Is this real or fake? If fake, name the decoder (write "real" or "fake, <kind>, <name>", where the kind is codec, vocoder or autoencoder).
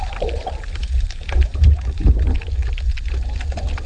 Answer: fake, vocoder, BigVGAN v2